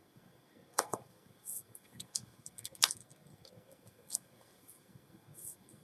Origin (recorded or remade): remade